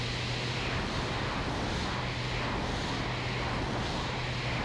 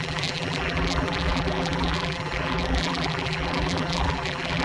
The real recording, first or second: first